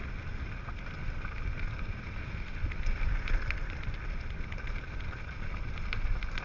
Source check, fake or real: real